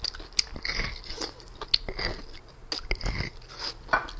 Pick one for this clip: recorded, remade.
recorded